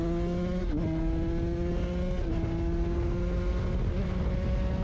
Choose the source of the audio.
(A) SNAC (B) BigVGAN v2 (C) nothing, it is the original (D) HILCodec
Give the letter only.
C